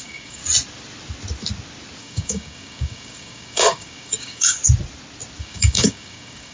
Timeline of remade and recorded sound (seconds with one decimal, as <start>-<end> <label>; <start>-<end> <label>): 0.0-0.4 remade; 0.4-2.0 recorded; 2.0-4.6 remade; 4.6-5.4 recorded; 5.4-6.5 remade